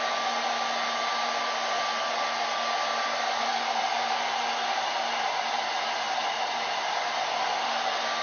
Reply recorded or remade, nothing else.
recorded